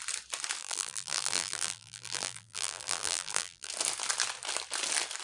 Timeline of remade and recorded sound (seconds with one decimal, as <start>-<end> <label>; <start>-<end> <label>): 0.0-0.6 recorded; 0.6-3.7 remade; 3.7-5.2 recorded